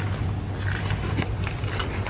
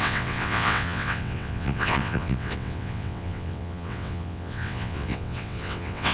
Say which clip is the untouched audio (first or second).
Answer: first